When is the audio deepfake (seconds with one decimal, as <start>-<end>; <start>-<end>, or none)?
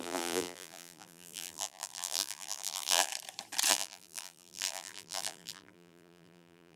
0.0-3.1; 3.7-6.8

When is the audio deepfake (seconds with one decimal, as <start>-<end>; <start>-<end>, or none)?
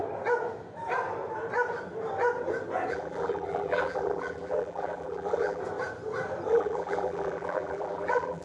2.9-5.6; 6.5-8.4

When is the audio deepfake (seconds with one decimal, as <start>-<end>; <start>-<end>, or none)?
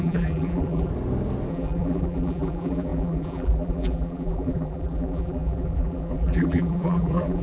0.0-0.9; 1.5-7.4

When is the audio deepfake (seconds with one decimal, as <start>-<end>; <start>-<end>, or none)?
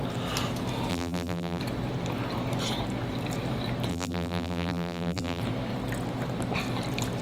0.9-1.6; 3.9-5.4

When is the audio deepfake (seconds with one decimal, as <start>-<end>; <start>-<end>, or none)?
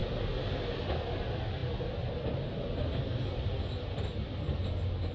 none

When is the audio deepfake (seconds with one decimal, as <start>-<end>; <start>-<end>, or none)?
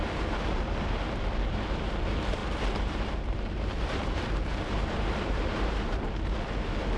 2.4-6.0